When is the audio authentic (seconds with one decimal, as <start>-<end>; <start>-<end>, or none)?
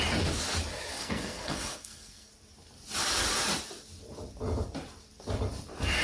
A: 0.0-0.9; 2.3-6.0